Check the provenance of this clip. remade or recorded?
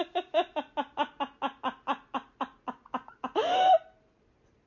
recorded